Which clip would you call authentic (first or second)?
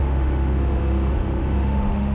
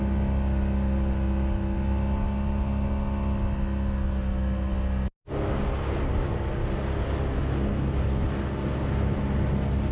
second